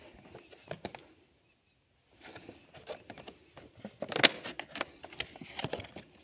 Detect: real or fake real